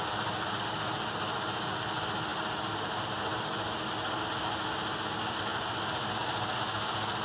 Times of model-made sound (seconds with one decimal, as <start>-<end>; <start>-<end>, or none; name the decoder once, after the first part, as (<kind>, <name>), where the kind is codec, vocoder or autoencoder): none